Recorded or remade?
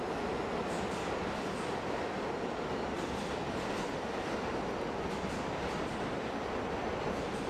recorded